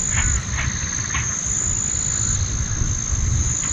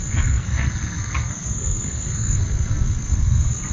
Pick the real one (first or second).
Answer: first